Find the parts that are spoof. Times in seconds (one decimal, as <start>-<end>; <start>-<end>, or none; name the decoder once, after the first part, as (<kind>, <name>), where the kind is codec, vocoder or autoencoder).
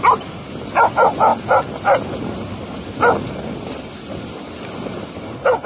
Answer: none